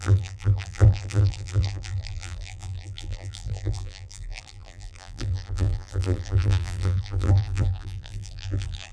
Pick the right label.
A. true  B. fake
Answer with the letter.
B